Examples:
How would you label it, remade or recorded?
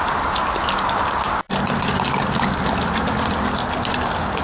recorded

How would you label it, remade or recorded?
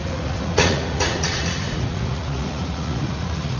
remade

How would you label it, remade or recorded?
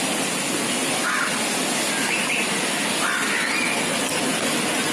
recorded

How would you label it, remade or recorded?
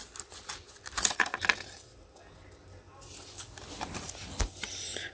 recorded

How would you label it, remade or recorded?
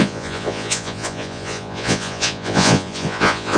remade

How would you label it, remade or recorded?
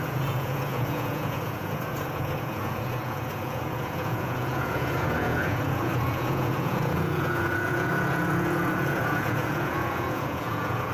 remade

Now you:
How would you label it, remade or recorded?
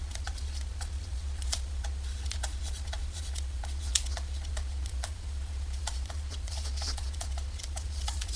remade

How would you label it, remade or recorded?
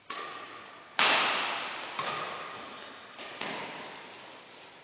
recorded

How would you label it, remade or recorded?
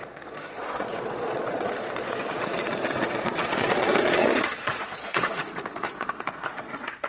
remade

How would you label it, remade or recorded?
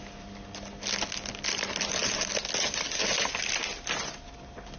recorded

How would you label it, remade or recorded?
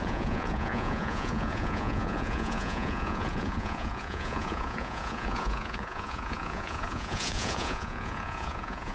remade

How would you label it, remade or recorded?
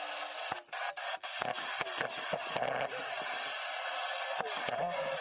recorded